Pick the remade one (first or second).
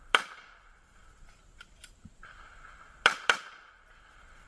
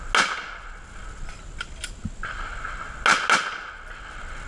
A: first